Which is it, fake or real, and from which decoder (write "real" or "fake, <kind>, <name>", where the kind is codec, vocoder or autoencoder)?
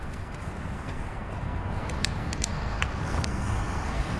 fake, codec, SNAC